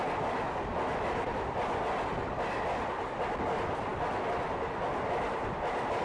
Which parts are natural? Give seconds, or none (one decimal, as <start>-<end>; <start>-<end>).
0.0-6.0